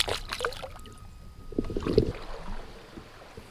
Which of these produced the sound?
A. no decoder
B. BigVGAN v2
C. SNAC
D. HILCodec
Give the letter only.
A